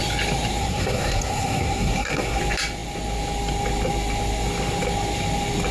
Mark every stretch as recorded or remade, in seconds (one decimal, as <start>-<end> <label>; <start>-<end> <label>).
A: 0.0-0.6 recorded; 0.6-2.4 remade; 2.4-5.7 recorded